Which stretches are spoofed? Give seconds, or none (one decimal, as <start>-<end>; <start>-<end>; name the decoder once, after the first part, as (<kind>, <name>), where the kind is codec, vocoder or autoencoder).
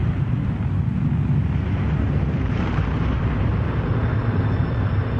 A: 1.7-3.5 (vocoder, BigVGAN v2)